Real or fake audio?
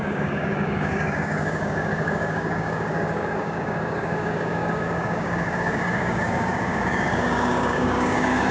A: fake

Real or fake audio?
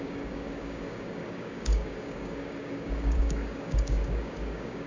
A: fake